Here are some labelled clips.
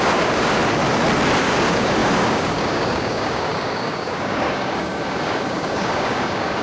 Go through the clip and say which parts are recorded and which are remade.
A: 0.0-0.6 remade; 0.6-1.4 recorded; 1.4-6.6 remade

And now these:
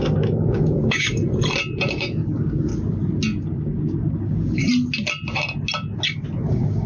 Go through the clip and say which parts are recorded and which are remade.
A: 0.0-1.2 remade; 1.2-1.9 recorded; 1.9-2.7 remade; 2.7-3.4 recorded; 3.4-4.6 remade; 4.6-6.5 recorded; 6.5-6.9 remade